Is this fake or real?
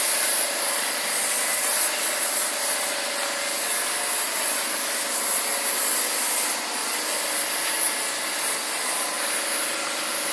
real